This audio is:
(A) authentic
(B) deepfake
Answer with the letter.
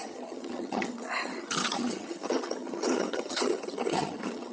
B